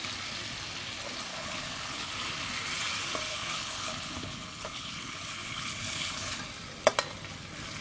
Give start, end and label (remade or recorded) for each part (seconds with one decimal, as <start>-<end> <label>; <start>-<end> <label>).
0.0-1.3 recorded; 1.3-2.1 remade; 2.1-3.3 recorded; 3.3-6.4 remade; 6.4-7.8 recorded